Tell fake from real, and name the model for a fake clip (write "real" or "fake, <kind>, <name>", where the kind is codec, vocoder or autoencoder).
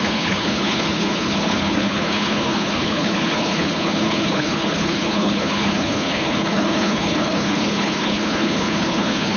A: fake, codec, HILCodec